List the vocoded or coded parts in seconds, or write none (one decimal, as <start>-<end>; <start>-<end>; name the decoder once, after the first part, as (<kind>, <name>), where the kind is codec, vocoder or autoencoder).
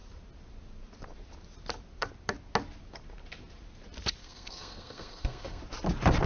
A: 4.2-5.6 (codec, SNAC)